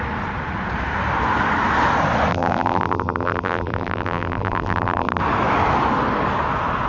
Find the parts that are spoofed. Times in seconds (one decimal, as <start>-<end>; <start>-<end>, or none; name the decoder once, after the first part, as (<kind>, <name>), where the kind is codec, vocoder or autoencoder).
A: 2.3-5.2 (vocoder, BigVGAN v2)

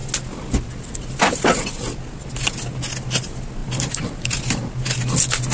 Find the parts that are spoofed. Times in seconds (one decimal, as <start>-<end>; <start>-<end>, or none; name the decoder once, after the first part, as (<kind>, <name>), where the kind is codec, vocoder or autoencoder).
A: 3.6-4.3 (vocoder, BigVGAN v2)

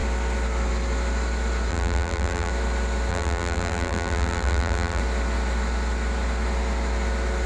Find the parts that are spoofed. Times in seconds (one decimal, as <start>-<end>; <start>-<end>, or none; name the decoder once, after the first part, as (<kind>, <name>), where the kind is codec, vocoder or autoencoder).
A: 1.7-2.5 (vocoder, BigVGAN v2); 3.1-5.0

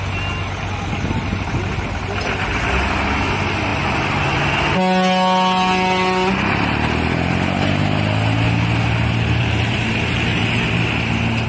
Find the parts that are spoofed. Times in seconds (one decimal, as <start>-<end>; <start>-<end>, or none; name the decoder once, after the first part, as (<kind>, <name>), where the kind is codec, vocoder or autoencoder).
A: 3.7-4.4 (vocoder, BigVGAN v2); 9.4-10.9

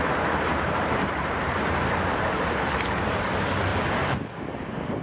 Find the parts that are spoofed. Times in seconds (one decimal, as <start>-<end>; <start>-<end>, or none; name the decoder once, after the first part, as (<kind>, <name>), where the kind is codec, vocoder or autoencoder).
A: 0.5-3.3 (vocoder, BigVGAN v2); 3.7-4.3

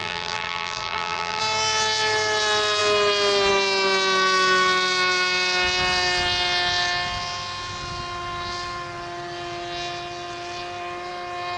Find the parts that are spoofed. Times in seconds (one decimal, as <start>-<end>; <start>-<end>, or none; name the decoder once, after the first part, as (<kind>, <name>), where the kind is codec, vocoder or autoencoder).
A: 0.0-1.4 (vocoder, BigVGAN v2)